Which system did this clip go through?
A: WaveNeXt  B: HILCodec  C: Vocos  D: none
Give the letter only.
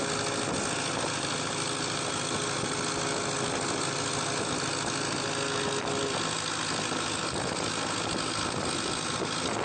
D